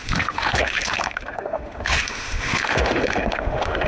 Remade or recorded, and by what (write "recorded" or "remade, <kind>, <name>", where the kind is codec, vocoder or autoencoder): remade, autoencoder, DAC-VAE